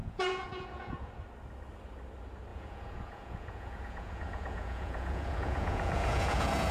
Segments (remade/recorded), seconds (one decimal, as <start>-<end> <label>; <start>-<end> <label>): 0.0-1.1 remade; 1.1-2.5 recorded; 2.5-6.7 remade